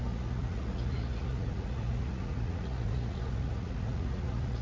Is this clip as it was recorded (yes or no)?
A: no